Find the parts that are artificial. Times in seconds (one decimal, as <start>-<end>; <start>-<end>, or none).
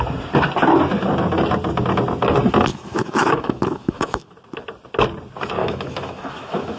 2.7-4.3; 5.6-6.8